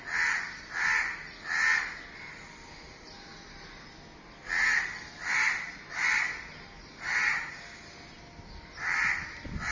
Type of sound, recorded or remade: recorded